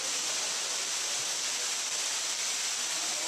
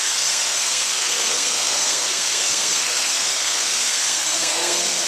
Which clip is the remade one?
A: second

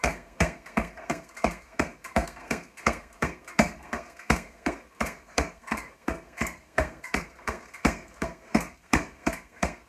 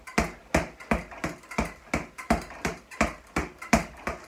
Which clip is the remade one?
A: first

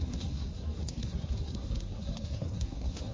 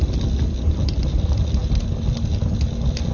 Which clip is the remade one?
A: first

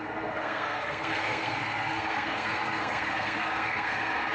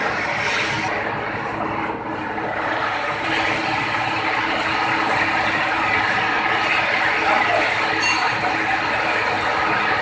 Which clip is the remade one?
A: first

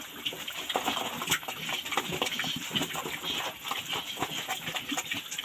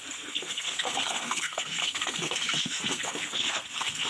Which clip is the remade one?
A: second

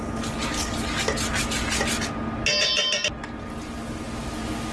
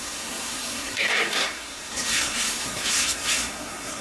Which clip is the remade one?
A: second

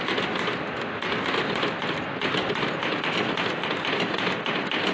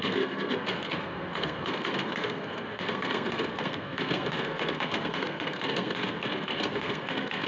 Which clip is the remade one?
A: second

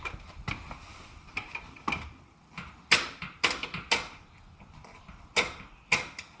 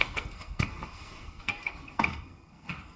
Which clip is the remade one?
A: second